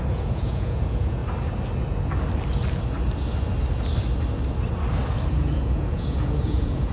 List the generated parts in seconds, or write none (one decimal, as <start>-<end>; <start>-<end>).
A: 0.0-1.2; 5.3-6.9